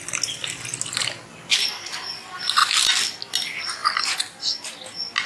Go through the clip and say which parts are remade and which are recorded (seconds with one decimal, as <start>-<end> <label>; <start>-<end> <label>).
0.0-5.3 recorded